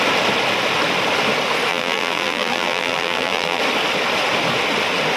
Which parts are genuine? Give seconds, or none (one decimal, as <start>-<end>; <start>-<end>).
0.0-1.7; 3.6-5.2